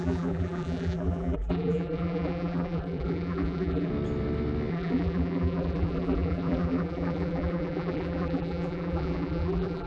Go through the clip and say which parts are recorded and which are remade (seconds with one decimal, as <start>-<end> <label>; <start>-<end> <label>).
0.0-3.9 remade; 3.9-4.7 recorded; 4.7-9.9 remade